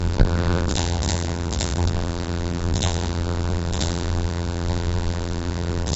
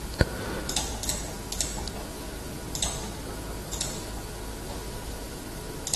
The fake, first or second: first